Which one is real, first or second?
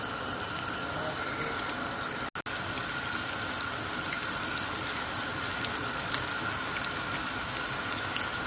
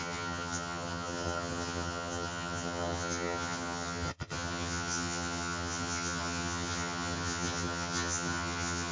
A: first